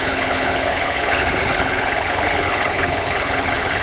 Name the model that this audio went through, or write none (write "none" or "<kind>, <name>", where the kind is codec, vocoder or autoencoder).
codec, HILCodec